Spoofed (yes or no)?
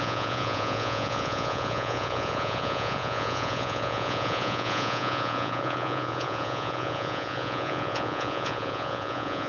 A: yes